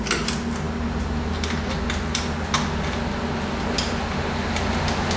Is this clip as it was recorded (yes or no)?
yes